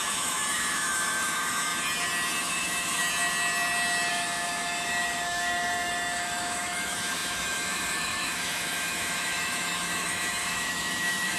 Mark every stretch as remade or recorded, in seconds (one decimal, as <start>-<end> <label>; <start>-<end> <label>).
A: 0.0-1.7 remade; 1.7-2.4 recorded; 2.4-3.0 remade; 3.0-4.1 recorded; 4.1-11.4 remade